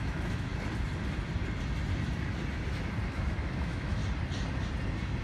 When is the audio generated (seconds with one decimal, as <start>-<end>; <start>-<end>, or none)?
0.0-0.5; 3.1-4.0